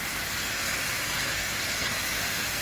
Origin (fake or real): fake